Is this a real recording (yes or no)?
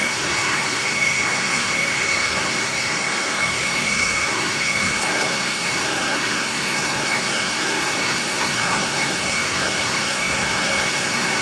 no